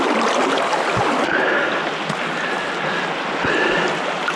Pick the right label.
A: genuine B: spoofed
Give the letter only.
A